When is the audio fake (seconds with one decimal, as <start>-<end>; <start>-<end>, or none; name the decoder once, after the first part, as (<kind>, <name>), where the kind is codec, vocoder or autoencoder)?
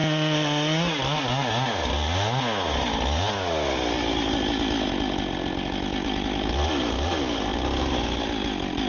none